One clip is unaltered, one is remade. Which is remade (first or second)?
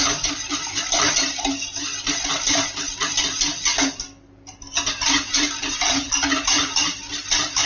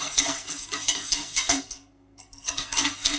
second